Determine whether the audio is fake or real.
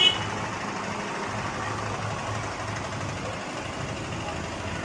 real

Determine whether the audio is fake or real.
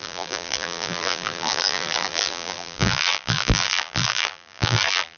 fake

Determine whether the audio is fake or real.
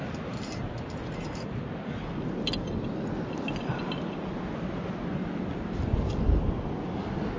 real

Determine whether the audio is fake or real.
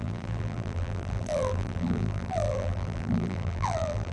fake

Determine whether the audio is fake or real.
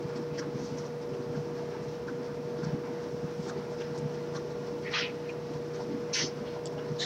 real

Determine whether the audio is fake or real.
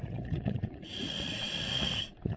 fake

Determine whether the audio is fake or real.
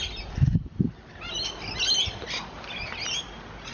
real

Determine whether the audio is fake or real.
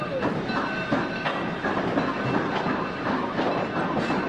real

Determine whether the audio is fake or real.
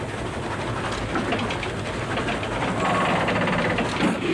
real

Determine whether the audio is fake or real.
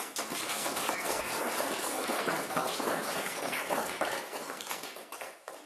fake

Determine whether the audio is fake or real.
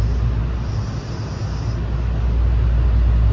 real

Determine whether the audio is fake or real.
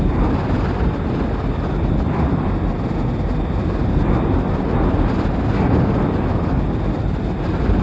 real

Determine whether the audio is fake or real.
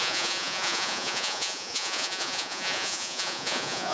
fake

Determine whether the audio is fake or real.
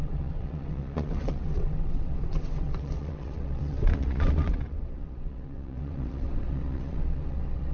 fake